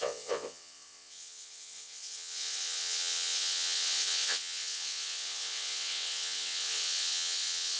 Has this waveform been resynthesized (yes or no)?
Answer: yes